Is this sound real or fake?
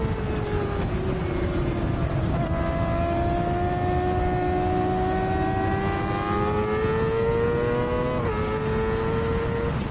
real